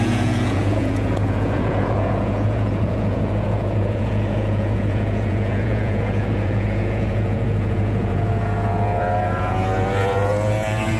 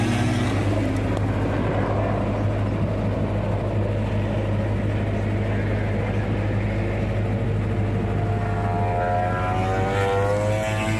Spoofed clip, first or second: first